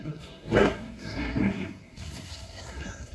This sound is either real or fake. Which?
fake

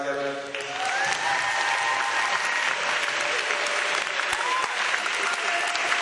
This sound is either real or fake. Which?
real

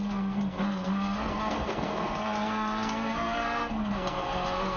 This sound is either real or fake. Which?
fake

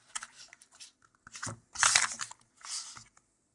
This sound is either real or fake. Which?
real